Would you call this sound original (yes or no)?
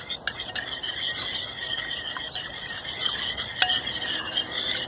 yes